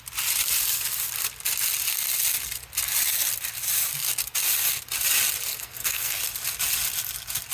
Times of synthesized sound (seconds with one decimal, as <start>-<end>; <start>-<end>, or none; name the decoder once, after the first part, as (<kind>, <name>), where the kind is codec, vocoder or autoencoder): 5.5-6.2 (codec, SNAC)